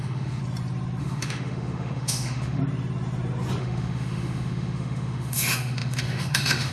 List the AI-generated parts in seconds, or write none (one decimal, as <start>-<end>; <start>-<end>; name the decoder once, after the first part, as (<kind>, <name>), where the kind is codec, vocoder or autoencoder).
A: 0.0-0.4 (autoencoder, DAC-VAE); 1.0-2.6; 3.6-6.7